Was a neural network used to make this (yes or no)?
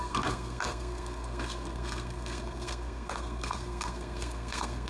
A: yes